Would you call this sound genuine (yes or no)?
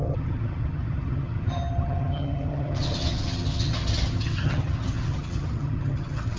no